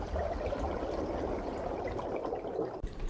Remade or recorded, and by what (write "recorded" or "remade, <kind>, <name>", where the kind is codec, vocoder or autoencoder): remade, vocoder, BigVGAN v2